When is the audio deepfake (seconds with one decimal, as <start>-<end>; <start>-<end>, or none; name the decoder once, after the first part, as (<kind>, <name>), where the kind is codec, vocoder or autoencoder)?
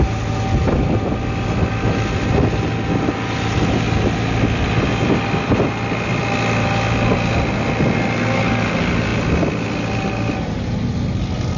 none